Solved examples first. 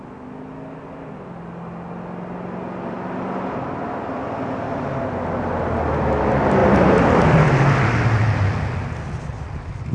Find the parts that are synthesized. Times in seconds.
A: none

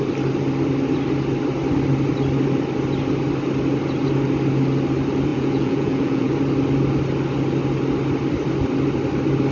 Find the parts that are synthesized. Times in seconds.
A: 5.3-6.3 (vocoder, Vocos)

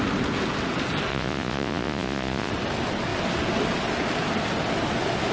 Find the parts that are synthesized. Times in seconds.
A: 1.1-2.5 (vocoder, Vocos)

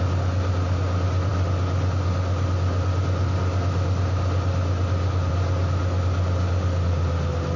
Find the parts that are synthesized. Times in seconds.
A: none

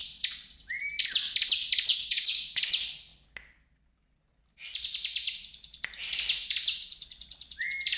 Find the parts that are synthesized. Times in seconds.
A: 1.9-2.6 (codec, DAC)

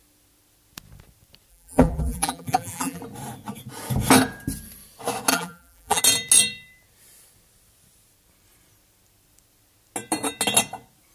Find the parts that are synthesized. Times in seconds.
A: 1.5-3.0 (vocoder, BigVGAN v2); 5.3-6.0